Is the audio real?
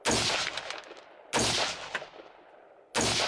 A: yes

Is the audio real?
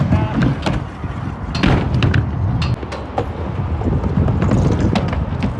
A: yes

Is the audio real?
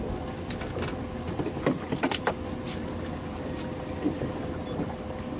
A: yes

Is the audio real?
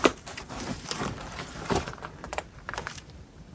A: no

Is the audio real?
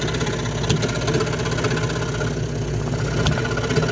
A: yes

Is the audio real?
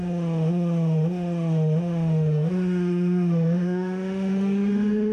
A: no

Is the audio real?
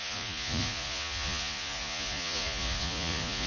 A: no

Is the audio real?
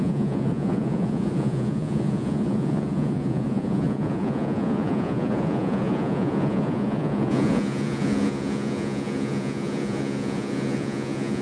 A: no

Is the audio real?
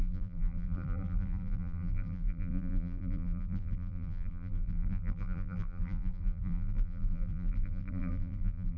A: no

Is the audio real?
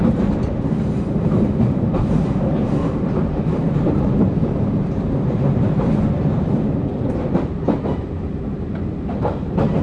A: no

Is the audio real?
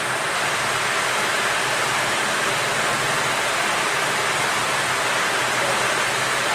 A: yes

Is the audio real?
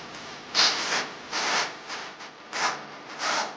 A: yes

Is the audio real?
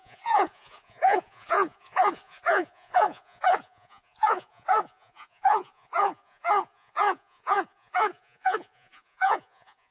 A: no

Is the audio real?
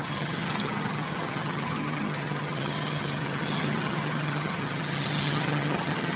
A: no